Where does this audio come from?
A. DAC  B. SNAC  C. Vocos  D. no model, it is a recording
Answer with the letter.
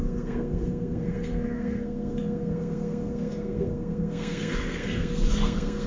B